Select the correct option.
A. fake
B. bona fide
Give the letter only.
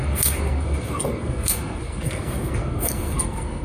A